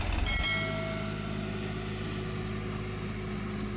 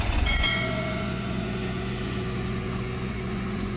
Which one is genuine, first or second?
first